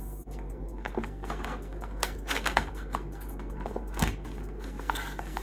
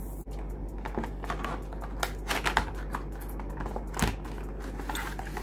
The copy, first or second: first